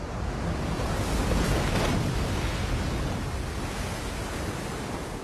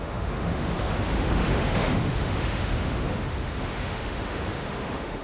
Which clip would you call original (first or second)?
first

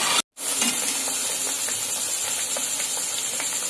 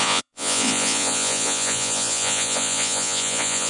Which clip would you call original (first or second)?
first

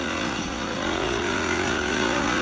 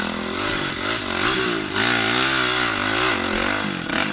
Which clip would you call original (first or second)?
second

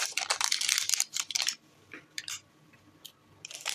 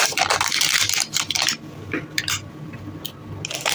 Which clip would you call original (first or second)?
second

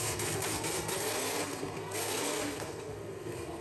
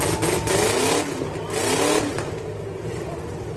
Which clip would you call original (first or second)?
second